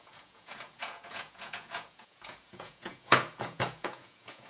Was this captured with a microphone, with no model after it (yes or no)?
no